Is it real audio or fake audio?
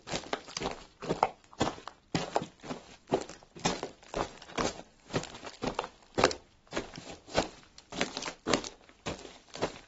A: real